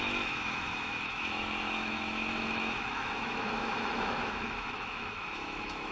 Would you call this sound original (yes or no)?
no